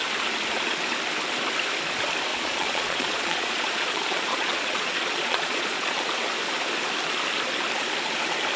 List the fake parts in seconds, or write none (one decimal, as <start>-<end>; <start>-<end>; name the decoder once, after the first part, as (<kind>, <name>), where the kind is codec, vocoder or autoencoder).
2.3-6.0 (vocoder, Vocos)